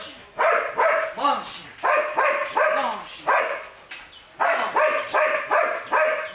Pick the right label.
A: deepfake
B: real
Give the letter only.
B